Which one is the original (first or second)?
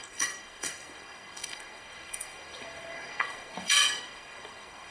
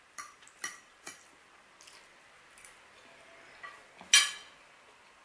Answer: second